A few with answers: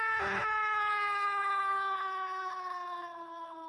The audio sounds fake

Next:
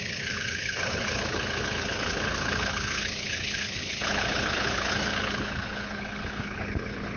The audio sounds fake